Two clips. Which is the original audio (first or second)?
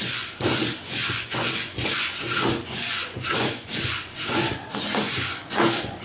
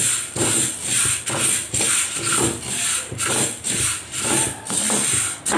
second